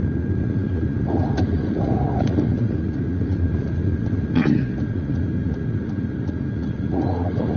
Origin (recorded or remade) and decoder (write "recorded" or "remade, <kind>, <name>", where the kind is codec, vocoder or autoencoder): remade, vocoder, Vocos